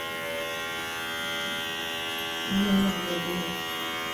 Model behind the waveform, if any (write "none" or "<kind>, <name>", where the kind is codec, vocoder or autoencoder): none